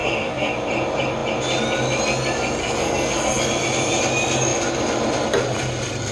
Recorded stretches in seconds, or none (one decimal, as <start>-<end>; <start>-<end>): 0.5-2.6; 3.4-6.1